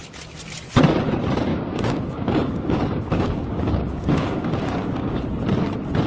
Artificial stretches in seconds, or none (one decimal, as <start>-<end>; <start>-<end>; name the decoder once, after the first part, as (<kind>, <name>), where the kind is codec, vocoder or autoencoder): 1.5-5.2 (codec, DAC)